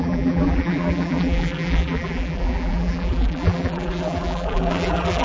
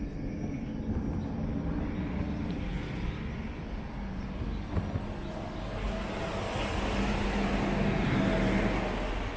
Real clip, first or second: second